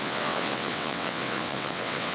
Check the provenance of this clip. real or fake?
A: fake